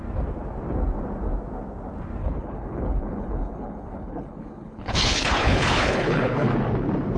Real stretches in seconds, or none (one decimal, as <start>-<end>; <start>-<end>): 0.0-2.2; 6.5-7.2